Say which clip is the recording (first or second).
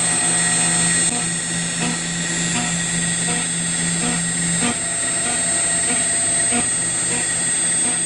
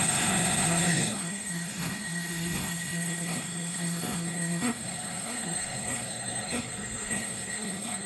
first